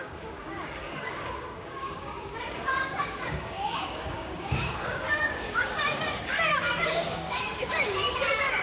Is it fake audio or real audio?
fake